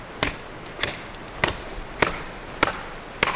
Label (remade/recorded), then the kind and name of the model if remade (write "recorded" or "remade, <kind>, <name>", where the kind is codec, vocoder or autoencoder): recorded